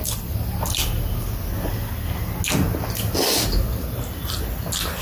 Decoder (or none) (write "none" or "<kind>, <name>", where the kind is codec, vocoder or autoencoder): none